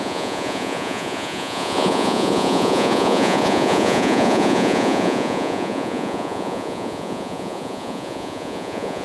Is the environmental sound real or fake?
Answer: fake